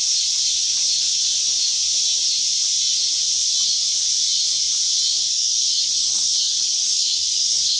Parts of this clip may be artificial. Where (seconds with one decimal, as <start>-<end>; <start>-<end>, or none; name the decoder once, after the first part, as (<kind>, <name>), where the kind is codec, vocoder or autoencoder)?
5.2-7.8 (codec, DAC)